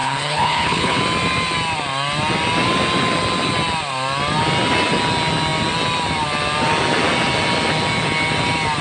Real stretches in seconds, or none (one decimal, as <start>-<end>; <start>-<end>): 1.0-8.8